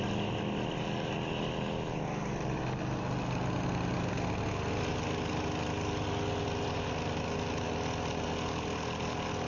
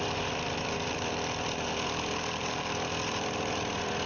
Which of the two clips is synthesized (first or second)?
second